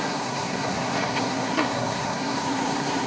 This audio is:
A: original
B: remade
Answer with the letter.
B